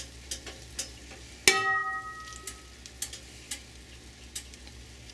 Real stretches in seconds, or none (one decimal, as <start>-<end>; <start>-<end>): 0.0-5.1